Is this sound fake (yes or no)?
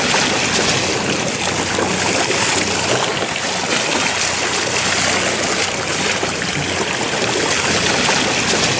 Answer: no